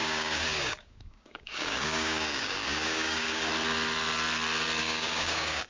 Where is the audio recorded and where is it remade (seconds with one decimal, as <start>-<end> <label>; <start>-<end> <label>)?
0.0-3.4 remade; 3.4-4.8 recorded; 4.8-5.7 remade